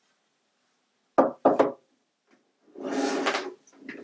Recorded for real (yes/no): yes